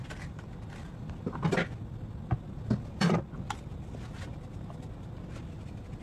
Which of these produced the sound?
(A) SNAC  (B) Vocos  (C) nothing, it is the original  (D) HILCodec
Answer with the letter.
C